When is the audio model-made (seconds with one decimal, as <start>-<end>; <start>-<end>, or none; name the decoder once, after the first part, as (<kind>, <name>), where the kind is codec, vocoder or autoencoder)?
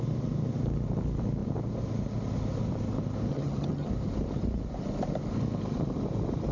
3.3-3.9 (vocoder, HiFi-GAN)